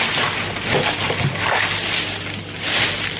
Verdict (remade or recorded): recorded